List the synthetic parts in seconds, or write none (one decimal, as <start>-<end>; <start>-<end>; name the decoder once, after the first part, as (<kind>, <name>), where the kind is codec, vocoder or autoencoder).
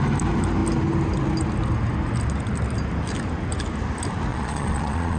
4.3-5.2 (vocoder, Vocos)